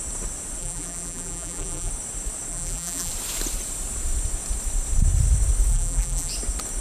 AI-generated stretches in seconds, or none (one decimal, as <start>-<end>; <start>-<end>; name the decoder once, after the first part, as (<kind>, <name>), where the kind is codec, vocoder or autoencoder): 0.6-1.9 (vocoder, BigVGAN v2); 2.5-3.1; 5.7-6.3